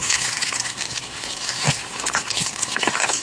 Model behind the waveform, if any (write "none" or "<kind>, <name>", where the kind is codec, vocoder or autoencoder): codec, SNAC